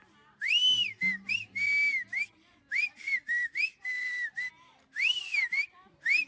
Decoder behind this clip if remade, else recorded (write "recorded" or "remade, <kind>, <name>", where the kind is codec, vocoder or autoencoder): recorded